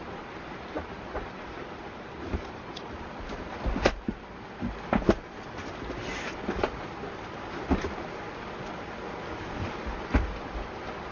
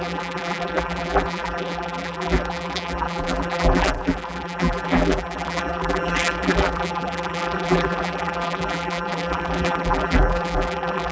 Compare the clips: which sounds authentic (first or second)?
first